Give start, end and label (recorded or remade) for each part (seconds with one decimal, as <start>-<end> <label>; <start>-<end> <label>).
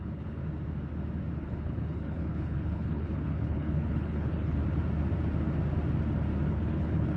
0.0-0.4 remade; 0.4-1.4 recorded; 1.4-4.6 remade; 4.6-6.5 recorded; 6.5-7.2 remade